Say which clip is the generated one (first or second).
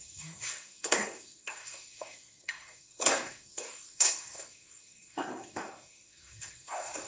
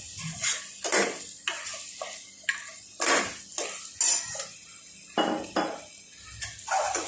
first